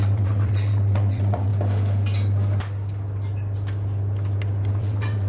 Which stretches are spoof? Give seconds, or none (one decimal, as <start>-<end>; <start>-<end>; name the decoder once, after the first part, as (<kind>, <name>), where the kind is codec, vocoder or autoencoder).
0.0-1.5 (vocoder, WaveNeXt); 4.7-5.3